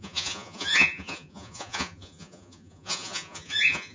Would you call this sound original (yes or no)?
no